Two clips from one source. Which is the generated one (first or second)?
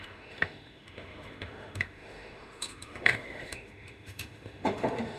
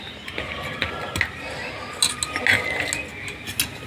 first